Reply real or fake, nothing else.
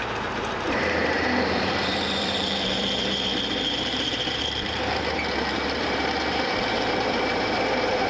fake